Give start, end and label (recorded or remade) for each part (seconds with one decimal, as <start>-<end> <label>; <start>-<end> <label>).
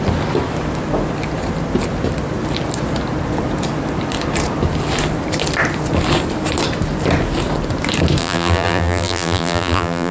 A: 0.0-8.2 recorded; 8.2-10.1 remade